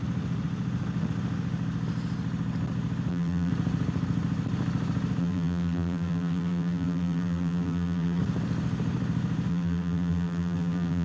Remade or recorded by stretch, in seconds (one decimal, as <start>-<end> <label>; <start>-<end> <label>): 0.0-3.1 recorded; 3.1-3.5 remade; 3.5-5.2 recorded; 5.2-8.2 remade; 8.2-9.5 recorded; 9.5-11.0 remade